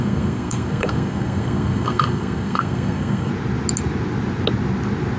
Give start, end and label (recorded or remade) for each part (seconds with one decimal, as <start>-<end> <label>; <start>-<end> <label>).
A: 0.0-3.3 remade; 3.3-5.2 recorded